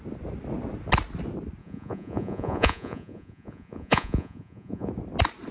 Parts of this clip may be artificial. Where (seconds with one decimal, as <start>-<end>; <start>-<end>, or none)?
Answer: 1.6-4.9